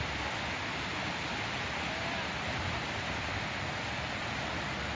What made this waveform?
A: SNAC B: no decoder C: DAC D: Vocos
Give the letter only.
B